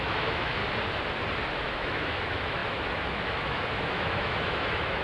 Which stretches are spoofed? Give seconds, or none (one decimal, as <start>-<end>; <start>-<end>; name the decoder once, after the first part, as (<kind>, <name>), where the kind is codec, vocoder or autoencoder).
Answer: 0.0-0.6 (autoencoder, DAC-VAE); 1.7-5.0